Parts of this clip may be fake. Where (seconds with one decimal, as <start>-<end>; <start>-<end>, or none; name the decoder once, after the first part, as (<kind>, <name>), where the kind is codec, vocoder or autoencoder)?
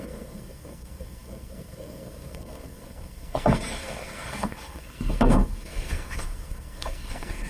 0.0-7.5 (codec, SNAC)